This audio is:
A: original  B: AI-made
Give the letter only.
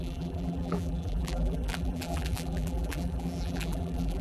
B